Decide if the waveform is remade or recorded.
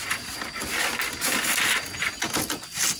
recorded